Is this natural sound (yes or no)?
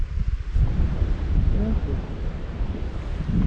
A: yes